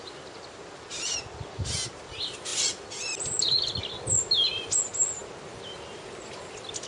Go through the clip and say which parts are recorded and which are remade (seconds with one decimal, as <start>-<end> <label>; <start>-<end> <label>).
0.0-6.9 recorded